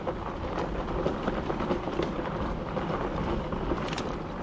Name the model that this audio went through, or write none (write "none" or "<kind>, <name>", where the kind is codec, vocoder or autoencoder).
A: none